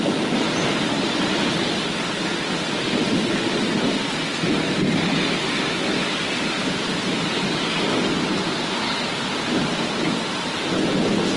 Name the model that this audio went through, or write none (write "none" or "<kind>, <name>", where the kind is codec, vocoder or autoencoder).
none